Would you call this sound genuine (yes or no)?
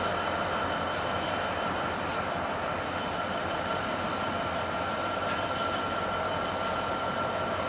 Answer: yes